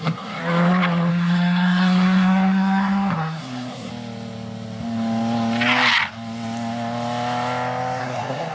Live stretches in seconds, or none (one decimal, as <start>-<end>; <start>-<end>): 0.4-1.1; 3.9-8.0